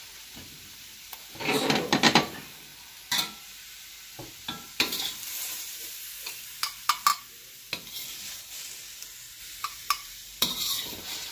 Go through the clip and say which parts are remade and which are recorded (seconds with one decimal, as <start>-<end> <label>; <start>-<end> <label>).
0.0-7.1 remade; 7.1-9.4 recorded; 9.4-11.3 remade